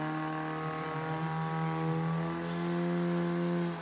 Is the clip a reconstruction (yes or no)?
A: no